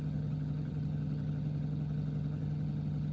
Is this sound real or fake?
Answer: fake